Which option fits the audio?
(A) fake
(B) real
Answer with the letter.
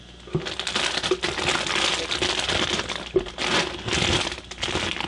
B